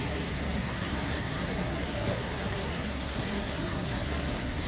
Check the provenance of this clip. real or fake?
fake